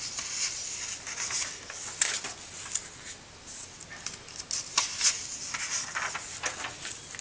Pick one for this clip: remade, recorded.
recorded